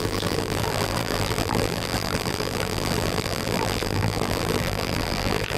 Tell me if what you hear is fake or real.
fake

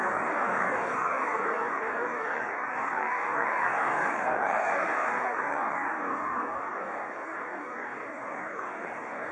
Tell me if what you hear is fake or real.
fake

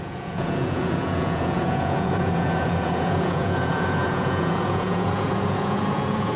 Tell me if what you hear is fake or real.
fake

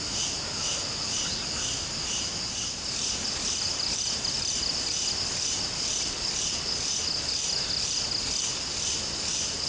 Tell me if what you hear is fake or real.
real